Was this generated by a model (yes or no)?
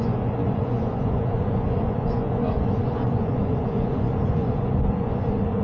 yes